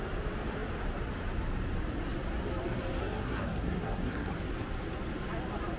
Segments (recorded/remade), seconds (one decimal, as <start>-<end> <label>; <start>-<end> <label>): 0.0-3.0 recorded; 3.0-4.3 remade; 4.3-5.8 recorded